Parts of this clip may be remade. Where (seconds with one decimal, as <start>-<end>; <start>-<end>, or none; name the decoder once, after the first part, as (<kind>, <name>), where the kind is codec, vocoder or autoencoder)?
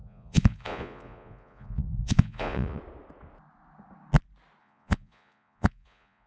0.0-2.8 (vocoder, Vocos); 4.6-6.3